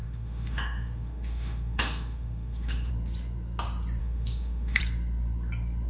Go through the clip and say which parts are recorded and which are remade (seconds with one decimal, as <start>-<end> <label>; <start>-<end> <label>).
0.0-2.9 remade; 2.9-4.0 recorded; 4.0-4.8 remade; 4.8-5.9 recorded